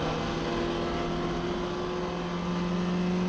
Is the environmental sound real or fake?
real